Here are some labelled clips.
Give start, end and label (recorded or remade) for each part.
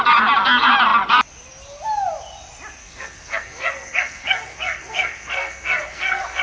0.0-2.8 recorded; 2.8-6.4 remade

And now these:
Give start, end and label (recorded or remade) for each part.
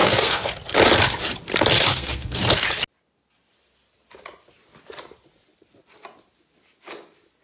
0.0-0.5 remade; 0.5-1.9 recorded; 1.9-2.4 remade; 2.4-7.4 recorded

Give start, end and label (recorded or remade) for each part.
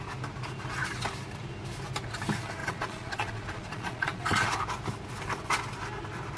0.0-2.6 recorded; 2.6-4.5 remade; 4.5-6.4 recorded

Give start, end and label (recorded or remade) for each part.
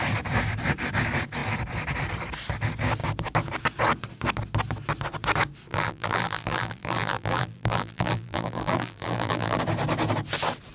0.0-5.7 recorded; 5.7-9.6 remade; 9.6-10.7 recorded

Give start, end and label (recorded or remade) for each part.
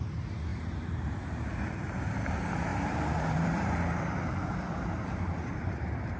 0.0-0.5 recorded; 0.5-1.9 remade; 1.9-2.7 recorded; 2.7-6.2 remade